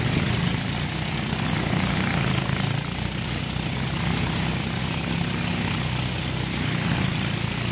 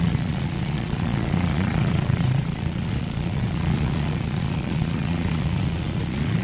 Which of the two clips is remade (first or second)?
second